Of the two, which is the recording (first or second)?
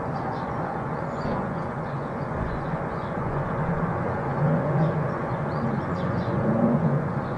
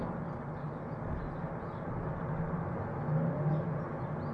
second